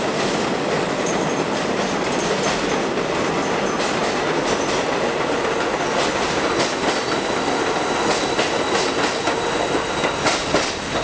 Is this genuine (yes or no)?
yes